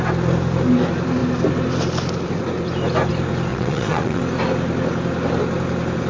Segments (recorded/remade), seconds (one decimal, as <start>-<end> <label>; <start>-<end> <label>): 0.0-3.5 recorded; 3.5-4.2 remade; 4.2-6.1 recorded